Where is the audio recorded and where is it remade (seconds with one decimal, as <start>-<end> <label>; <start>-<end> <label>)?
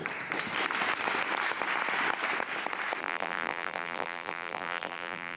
0.0-3.0 recorded; 3.0-5.4 remade